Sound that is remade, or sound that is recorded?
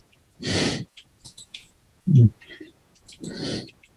remade